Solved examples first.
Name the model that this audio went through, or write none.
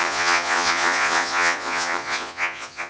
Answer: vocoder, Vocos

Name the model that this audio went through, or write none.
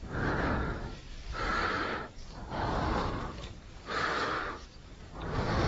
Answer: codec, DAC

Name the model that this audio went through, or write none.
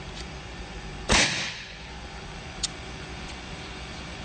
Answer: vocoder, Vocos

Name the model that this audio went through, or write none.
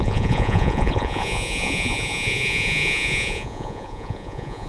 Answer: vocoder, Vocos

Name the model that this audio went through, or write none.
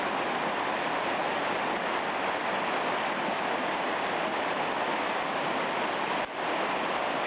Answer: none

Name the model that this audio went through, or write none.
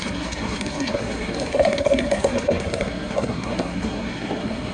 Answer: codec, SNAC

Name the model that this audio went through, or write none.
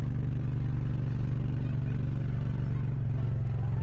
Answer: none